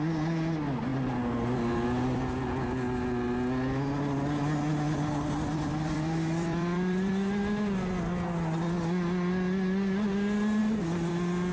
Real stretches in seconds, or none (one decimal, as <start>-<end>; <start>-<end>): 0.0-5.5; 7.1-11.5